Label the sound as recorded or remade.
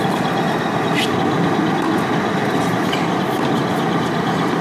recorded